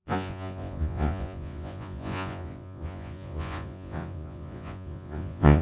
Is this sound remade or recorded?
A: remade